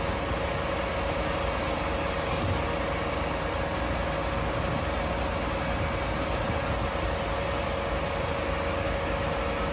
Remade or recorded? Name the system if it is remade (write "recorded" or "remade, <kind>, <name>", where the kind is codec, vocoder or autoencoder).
recorded